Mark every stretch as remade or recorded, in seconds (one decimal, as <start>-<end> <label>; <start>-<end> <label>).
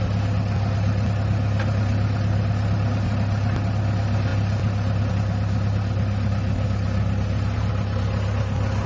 0.0-8.9 recorded